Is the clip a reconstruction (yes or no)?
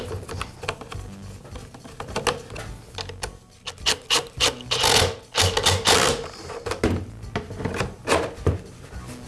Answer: no